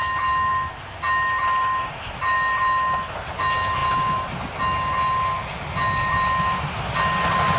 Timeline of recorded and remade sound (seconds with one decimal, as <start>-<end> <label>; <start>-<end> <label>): 0.0-7.6 recorded